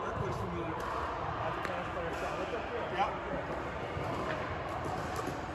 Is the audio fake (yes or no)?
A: no